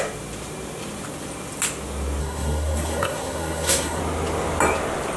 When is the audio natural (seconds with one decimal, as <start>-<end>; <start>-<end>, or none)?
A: 0.0-2.2; 4.0-5.2